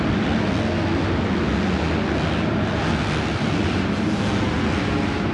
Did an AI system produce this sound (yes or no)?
no